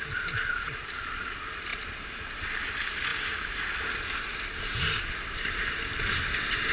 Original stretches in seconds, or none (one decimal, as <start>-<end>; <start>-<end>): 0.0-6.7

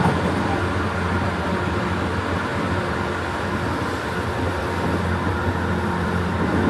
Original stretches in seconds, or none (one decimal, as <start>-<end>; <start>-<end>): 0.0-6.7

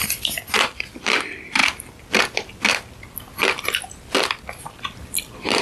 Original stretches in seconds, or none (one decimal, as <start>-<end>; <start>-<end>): 1.6-5.0

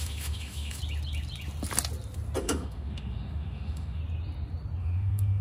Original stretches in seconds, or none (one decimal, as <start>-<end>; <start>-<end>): 0.8-2.4; 4.0-4.8